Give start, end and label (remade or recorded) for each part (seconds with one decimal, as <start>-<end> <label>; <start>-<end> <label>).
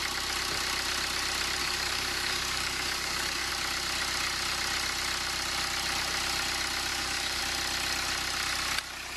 0.0-1.6 recorded; 1.6-3.5 remade; 3.5-6.9 recorded; 6.9-7.4 remade; 7.4-9.2 recorded